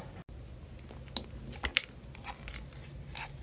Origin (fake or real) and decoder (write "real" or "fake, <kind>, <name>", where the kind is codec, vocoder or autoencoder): real